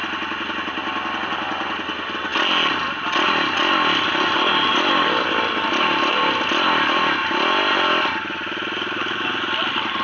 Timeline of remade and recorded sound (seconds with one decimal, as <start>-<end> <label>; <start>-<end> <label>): 0.0-10.0 recorded